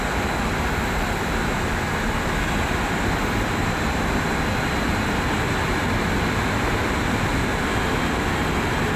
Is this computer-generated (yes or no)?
no